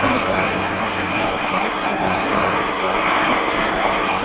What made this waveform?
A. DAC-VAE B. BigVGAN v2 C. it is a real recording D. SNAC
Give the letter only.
D